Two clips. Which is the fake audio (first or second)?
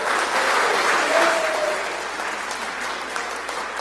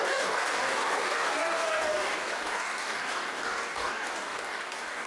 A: second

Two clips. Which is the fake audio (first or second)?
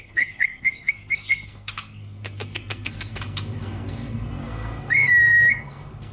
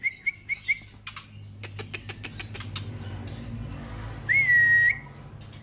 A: first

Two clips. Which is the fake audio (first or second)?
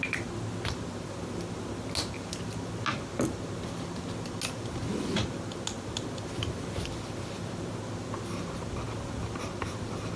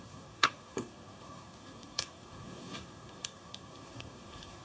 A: second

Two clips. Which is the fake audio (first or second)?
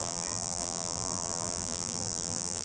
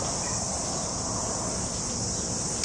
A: first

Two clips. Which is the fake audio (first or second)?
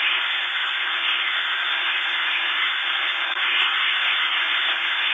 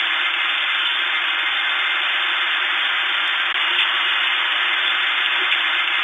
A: first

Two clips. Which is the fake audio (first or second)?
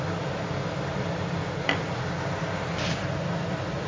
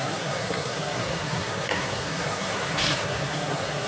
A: second